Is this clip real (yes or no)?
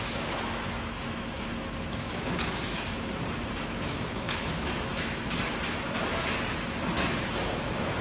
no